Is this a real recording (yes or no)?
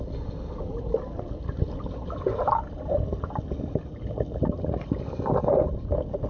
yes